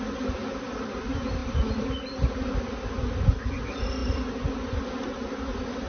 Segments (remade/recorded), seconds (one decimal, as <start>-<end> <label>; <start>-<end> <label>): 0.0-5.9 recorded